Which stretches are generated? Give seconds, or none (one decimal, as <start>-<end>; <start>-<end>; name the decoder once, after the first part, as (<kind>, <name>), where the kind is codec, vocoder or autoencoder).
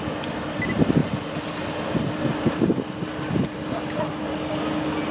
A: none